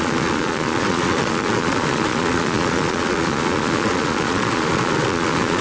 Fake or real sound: fake